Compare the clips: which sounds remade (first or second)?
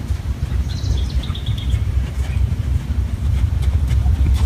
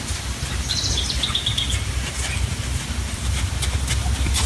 first